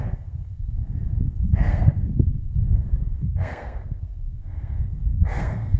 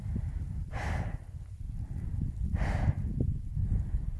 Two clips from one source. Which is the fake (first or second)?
first